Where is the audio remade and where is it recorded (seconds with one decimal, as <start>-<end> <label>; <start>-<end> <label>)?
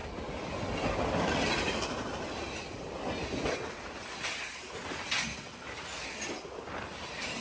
0.0-7.4 recorded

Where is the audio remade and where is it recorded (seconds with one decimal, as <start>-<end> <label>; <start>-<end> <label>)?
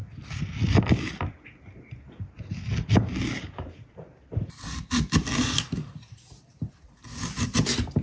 0.0-1.3 remade; 1.3-8.0 recorded